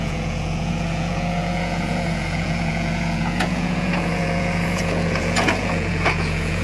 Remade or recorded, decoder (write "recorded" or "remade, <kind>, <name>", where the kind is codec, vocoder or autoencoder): remade, vocoder, Vocos